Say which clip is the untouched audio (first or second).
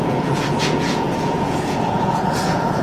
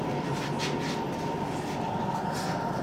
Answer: second